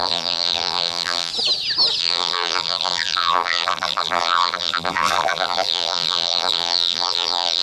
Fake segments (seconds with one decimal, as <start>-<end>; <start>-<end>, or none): 0.0-1.3; 2.0-7.6